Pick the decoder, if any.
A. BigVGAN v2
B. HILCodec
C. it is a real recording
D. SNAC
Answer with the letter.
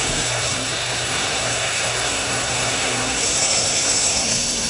D